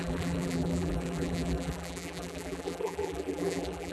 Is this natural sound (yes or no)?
no